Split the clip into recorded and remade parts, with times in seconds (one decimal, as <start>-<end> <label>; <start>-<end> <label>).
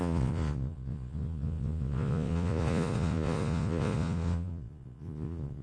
0.0-5.6 remade